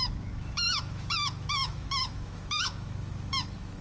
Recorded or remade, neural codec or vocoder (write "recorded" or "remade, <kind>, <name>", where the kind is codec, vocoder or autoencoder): remade, autoencoder, DAC-VAE